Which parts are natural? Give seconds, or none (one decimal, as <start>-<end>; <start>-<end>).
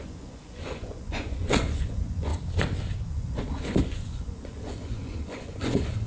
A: 2.3-3.1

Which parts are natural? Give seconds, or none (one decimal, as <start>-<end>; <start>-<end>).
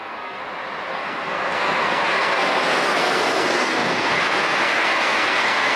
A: 0.4-0.9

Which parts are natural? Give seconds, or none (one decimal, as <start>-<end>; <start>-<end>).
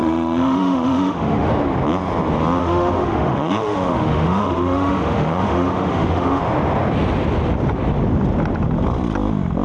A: 1.5-2.6; 6.4-9.6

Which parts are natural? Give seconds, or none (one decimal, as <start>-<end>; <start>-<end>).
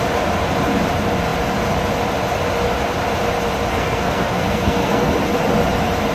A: 0.0-3.7; 5.1-6.1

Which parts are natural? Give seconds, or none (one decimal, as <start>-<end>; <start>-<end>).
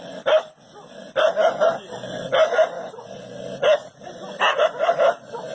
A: 0.0-5.5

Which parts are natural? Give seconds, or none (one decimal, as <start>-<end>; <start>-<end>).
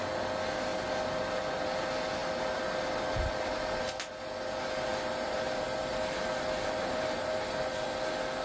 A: 0.0-0.7; 1.8-2.2; 3.5-4.9; 6.8-8.4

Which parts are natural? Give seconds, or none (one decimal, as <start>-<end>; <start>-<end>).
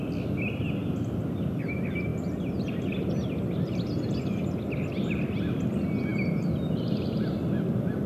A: 0.0-8.1